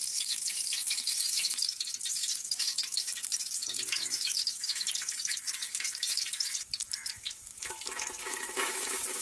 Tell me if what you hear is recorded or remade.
remade